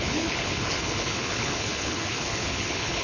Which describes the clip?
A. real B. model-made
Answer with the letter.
B